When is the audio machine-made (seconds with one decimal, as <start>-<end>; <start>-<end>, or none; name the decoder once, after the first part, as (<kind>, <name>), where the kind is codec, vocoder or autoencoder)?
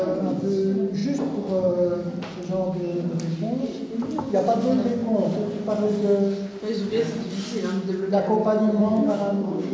8.8-9.7 (codec, DAC)